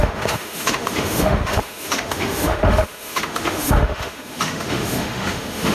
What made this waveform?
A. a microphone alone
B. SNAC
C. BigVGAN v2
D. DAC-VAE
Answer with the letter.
D